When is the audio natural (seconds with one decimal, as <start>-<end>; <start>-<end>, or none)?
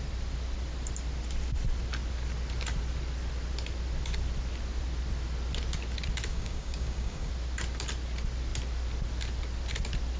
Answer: 0.0-6.3; 7.3-10.2